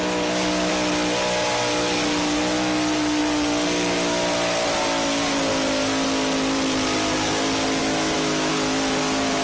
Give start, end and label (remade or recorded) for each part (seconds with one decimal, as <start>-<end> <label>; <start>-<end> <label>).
0.0-0.7 remade; 0.7-7.8 recorded; 7.8-8.5 remade; 8.5-9.4 recorded

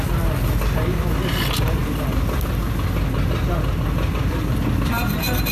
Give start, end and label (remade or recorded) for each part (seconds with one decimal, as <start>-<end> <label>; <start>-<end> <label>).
0.0-5.5 recorded

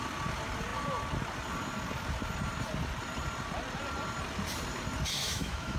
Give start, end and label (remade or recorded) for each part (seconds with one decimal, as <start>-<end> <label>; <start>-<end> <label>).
0.0-5.2 recorded; 5.2-5.8 remade

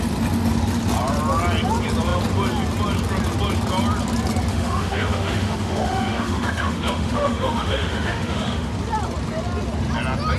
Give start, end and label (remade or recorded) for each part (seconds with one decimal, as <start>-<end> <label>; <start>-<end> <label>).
0.0-4.5 recorded; 4.5-8.7 remade; 8.7-10.4 recorded

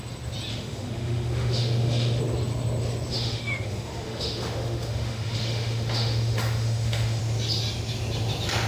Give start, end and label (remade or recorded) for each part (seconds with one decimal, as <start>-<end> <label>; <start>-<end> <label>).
0.0-0.5 recorded; 0.5-2.2 remade; 2.2-3.1 recorded; 3.1-7.2 remade; 7.2-8.7 recorded